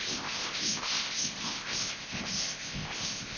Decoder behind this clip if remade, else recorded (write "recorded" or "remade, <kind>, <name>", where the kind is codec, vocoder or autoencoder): remade, codec, ZipCodec